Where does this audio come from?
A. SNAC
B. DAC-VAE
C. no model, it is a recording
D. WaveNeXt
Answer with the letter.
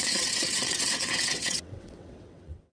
D